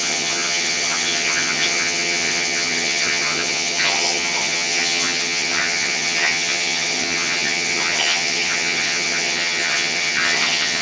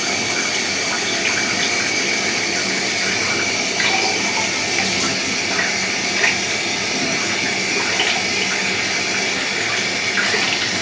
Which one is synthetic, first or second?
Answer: first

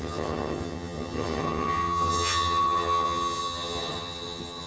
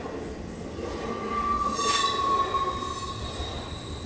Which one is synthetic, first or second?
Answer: first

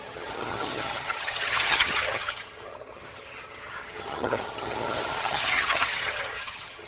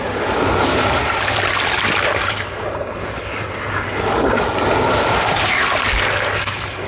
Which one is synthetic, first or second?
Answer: first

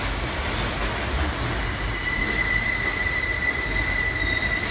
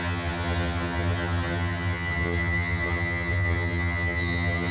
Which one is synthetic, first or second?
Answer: second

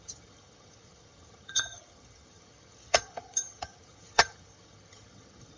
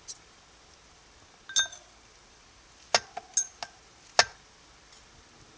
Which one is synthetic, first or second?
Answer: first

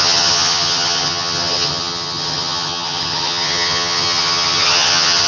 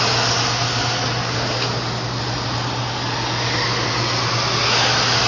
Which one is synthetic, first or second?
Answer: first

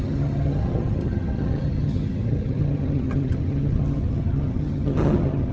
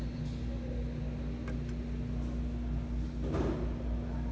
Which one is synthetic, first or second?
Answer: first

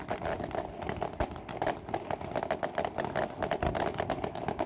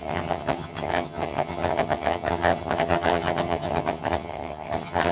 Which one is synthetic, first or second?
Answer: second